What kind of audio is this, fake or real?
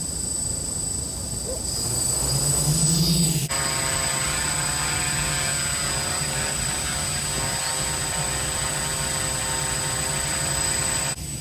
real